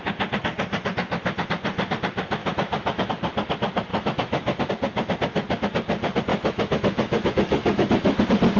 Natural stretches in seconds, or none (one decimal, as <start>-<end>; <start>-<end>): 0.0-2.4; 3.1-3.9; 4.7-6.3; 8.2-8.6